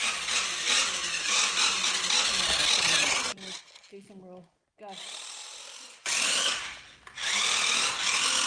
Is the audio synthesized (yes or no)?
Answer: no